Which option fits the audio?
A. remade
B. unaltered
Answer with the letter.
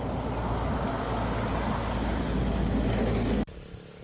B